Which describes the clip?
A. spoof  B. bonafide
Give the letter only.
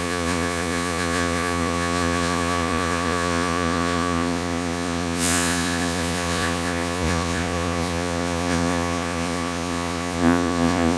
A